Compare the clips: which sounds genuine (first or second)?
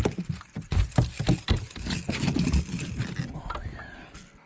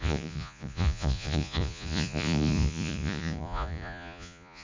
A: first